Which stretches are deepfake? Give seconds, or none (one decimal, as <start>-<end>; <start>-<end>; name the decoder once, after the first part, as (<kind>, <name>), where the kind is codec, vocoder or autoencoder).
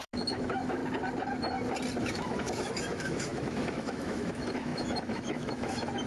0.0-0.8 (autoencoder, DAC-VAE); 2.0-6.1